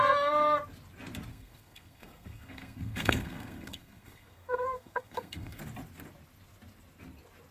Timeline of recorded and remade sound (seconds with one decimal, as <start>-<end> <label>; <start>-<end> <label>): 0.0-1.3 recorded; 1.3-5.6 remade; 5.6-7.5 recorded

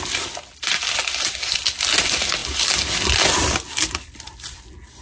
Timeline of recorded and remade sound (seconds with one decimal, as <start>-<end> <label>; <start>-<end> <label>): 0.0-5.0 recorded

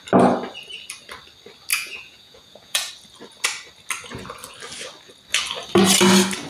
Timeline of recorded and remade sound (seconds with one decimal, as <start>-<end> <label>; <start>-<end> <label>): 0.0-1.7 recorded; 1.7-2.9 remade; 2.9-6.5 recorded

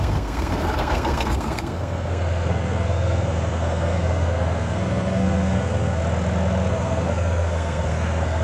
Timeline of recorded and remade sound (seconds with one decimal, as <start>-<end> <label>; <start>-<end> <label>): 0.0-6.0 remade; 6.0-6.7 recorded; 6.7-8.4 remade

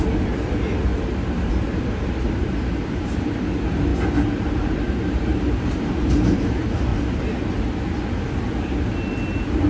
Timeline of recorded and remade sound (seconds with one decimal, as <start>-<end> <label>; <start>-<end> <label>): 0.0-3.9 remade; 3.9-5.1 recorded; 5.1-6.9 remade; 6.9-9.7 recorded